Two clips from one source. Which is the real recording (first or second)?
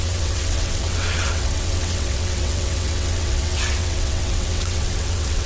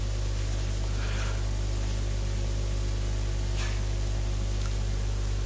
second